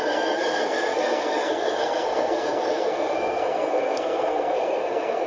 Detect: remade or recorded remade